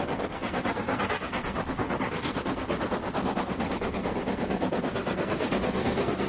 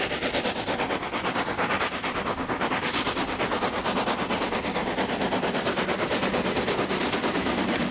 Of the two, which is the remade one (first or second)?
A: first